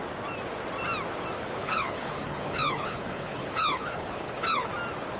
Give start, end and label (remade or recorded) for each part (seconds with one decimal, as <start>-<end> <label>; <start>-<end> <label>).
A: 0.0-1.6 recorded; 1.6-4.7 remade; 4.7-5.2 recorded